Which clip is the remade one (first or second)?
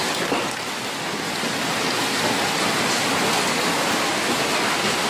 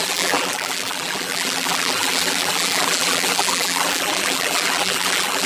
second